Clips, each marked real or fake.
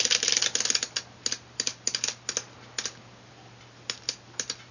real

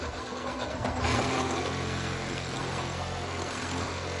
fake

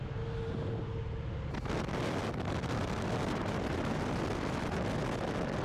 real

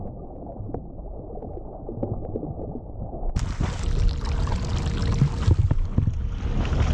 real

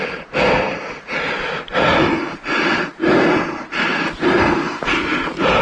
real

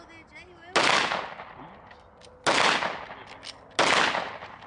real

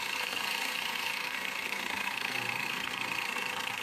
fake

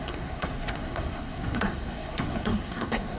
fake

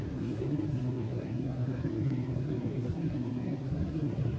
fake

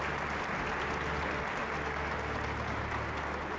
real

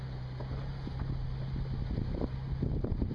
real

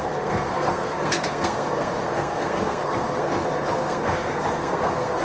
fake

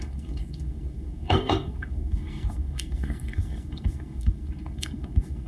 fake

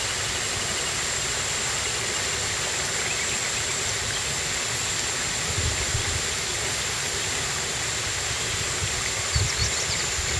real